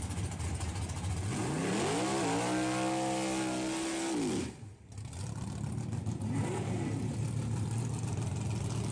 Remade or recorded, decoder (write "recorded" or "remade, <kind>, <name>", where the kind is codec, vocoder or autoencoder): recorded